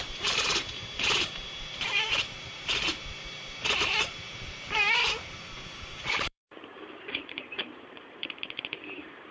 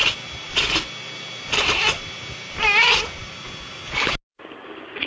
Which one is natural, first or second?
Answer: second